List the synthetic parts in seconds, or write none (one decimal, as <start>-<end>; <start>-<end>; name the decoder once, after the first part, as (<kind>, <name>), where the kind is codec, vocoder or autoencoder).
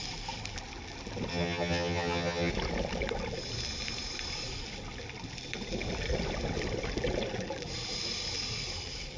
1.3-2.5 (vocoder, HiFi-GAN)